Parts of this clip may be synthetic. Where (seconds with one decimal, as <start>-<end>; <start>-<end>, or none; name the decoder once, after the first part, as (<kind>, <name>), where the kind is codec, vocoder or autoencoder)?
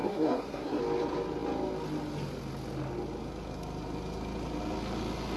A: 0.0-0.8 (codec, SNAC)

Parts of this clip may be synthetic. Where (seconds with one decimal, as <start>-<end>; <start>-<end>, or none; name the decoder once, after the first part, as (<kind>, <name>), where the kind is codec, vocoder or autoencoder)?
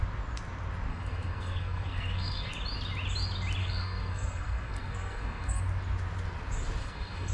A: 0.9-2.5 (codec, SNAC); 3.6-5.6; 6.8-7.3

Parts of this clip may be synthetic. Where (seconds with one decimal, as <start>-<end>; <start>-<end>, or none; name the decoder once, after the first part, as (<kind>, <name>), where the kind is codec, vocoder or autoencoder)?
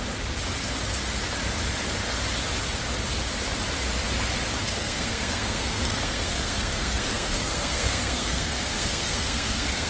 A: 4.6-9.9 (codec, SNAC)